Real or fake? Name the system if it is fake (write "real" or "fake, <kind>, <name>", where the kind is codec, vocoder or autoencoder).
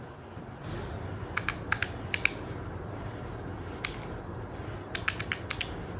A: real